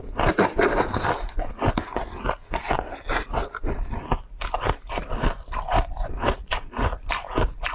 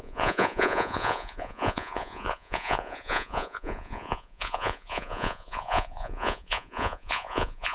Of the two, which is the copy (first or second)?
second